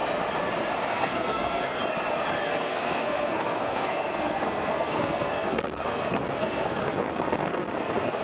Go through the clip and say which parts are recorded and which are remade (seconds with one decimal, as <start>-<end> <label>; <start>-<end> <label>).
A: 0.0-0.9 recorded; 0.9-1.8 remade; 1.8-2.4 recorded; 2.4-8.2 remade